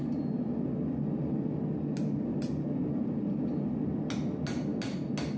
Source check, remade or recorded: recorded